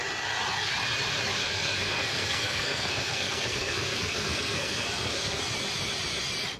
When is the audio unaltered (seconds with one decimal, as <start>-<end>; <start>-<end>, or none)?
0.0-1.4; 5.4-6.6